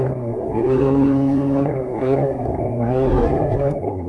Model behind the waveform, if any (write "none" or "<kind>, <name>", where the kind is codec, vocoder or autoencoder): codec, SNAC